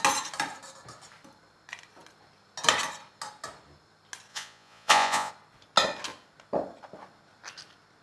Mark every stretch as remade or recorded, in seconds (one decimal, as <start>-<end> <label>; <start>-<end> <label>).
0.0-4.3 recorded; 4.3-5.3 remade; 5.3-8.0 recorded